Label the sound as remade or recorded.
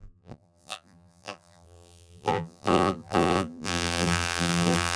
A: remade